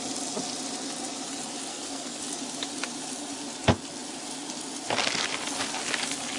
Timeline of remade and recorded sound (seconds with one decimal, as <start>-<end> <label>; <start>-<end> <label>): 0.0-1.7 recorded; 1.7-2.2 remade; 2.2-6.4 recorded